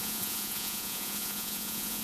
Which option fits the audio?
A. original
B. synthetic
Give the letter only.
B